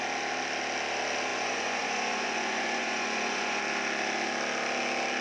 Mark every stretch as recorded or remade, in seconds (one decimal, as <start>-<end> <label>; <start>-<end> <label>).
0.0-1.3 recorded; 1.3-3.6 remade; 3.6-5.2 recorded